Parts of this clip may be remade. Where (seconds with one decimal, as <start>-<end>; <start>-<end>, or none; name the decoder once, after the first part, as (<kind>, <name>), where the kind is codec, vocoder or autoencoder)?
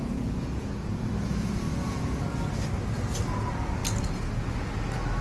0.0-1.1 (vocoder, Vocos); 1.7-2.2